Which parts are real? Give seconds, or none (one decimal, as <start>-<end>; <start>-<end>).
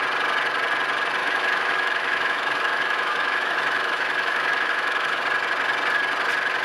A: 0.0-1.2; 5.2-6.6